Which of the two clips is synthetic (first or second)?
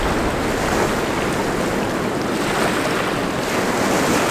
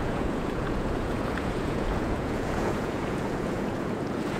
second